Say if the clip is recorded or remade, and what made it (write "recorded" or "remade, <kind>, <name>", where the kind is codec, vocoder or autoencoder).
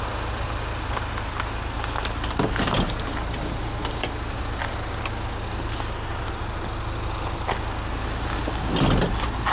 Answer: recorded